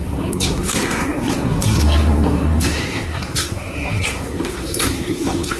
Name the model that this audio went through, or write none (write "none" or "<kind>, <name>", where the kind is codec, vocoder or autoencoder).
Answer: codec, SNAC